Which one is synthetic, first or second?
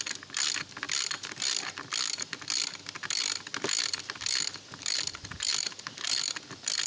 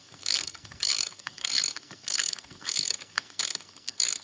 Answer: second